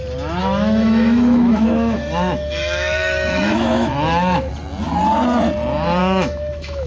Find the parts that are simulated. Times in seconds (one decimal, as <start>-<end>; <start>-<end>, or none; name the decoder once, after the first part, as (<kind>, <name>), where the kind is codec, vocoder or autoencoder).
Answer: 0.4-4.5 (autoencoder, DAC-VAE); 6.0-6.9